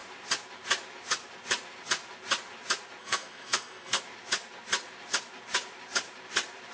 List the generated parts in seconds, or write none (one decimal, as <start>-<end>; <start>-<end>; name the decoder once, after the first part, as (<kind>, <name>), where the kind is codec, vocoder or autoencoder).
3.0-4.0 (codec, SNAC)